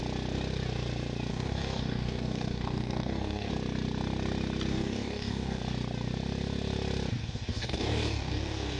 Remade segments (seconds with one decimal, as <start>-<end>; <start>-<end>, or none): 1.3-3.5; 4.7-5.6; 7.2-8.8